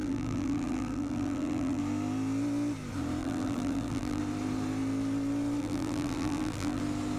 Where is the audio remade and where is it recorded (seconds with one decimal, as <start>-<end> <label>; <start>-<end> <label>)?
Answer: 0.0-1.8 remade; 1.8-3.2 recorded; 3.2-4.2 remade; 4.2-5.6 recorded; 5.6-6.8 remade; 6.8-7.2 recorded